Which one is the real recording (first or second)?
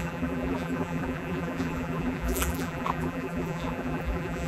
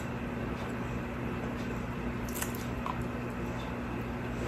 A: second